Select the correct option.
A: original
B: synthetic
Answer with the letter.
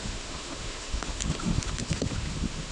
B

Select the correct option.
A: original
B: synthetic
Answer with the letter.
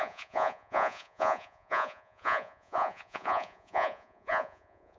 B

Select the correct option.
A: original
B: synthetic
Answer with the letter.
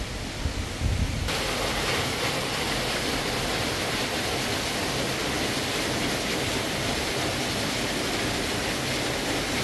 A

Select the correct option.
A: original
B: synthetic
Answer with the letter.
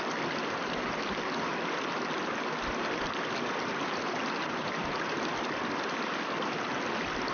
A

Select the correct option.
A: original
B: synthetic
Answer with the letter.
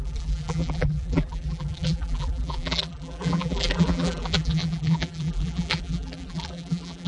B